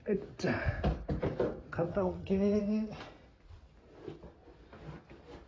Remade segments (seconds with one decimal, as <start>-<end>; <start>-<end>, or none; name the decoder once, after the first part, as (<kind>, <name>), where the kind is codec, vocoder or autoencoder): 1.9-2.6 (vocoder, HiFi-GAN)